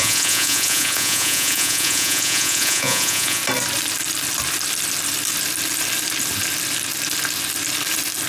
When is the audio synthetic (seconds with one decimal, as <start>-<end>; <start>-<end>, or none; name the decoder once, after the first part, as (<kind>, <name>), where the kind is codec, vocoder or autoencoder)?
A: 0.0-3.4 (vocoder, Vocos)